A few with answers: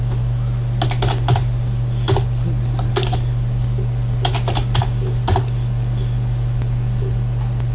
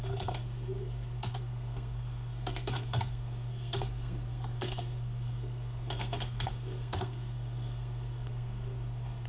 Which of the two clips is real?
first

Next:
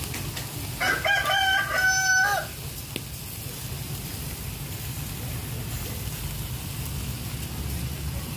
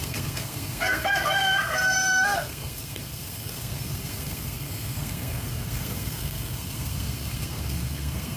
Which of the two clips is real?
first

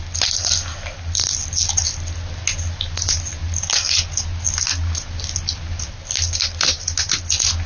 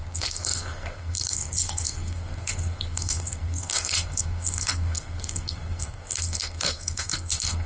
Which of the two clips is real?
first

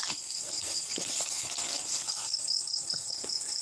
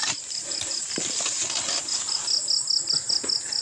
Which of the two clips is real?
second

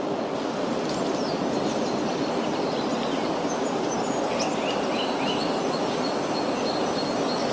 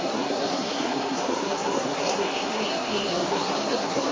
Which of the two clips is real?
first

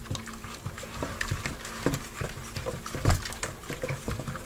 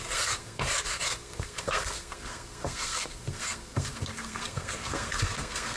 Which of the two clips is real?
first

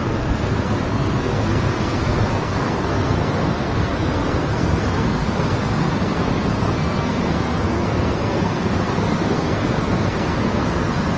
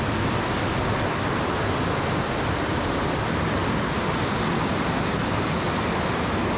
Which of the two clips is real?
second